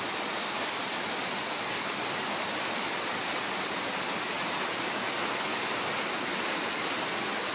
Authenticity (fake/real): real